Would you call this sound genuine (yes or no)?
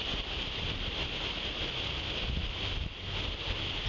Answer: yes